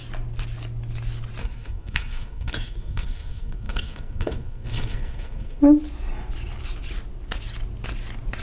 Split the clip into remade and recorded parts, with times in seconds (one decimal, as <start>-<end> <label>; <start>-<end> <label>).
0.0-1.4 recorded; 1.4-5.6 remade; 5.6-8.4 recorded